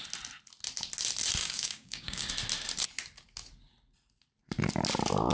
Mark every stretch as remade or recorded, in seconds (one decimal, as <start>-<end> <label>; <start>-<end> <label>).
0.0-1.4 recorded; 1.4-2.3 remade; 2.3-5.3 recorded